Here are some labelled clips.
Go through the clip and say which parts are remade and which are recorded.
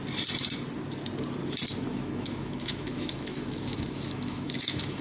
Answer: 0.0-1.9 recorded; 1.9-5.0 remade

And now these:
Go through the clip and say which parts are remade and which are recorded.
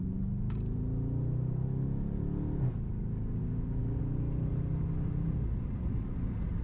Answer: 0.0-3.4 recorded; 3.4-4.0 remade; 4.0-6.6 recorded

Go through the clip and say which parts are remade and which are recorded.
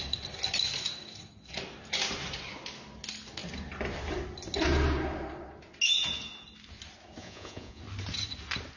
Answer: 0.0-7.2 recorded; 7.2-7.8 remade; 7.8-8.8 recorded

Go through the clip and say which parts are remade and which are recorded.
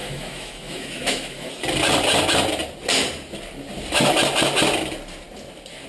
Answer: 0.0-1.5 remade; 1.5-5.9 recorded